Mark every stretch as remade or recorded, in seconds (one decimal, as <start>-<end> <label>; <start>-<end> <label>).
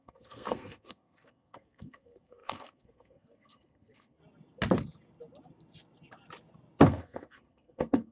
0.0-4.2 remade; 4.2-6.8 recorded; 6.8-8.1 remade